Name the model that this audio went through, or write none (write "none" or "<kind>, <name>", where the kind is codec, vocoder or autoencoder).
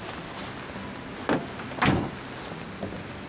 none